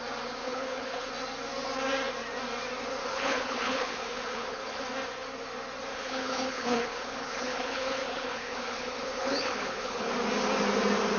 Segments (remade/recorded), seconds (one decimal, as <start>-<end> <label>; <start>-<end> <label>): 0.0-0.4 recorded; 0.4-1.1 remade; 1.1-3.0 recorded; 3.0-4.8 remade; 4.8-5.9 recorded; 5.9-10.1 remade; 10.1-11.2 recorded